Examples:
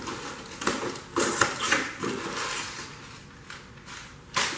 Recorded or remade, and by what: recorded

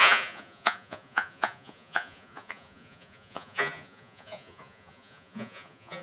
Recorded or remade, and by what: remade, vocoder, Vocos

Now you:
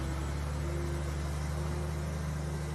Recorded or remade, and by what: recorded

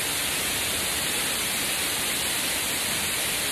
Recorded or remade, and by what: recorded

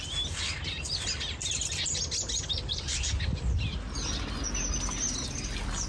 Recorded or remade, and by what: recorded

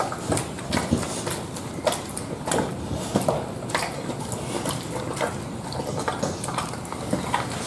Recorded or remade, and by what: recorded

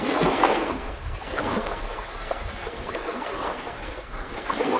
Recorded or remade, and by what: remade, codec, SNAC